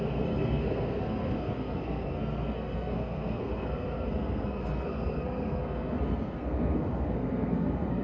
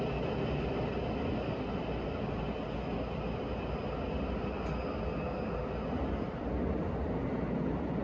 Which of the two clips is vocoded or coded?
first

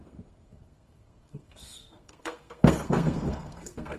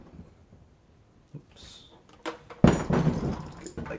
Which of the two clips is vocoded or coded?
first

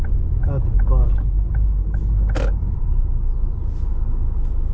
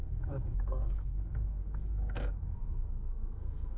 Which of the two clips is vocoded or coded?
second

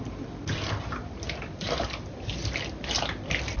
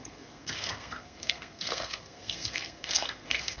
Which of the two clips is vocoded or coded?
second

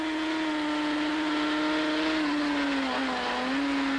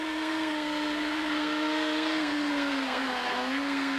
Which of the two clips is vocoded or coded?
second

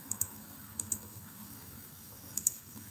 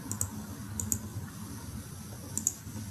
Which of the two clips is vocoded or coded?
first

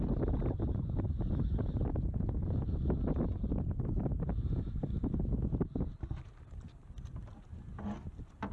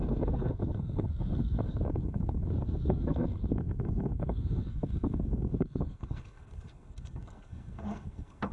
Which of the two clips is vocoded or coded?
second